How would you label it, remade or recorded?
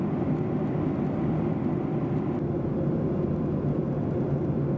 recorded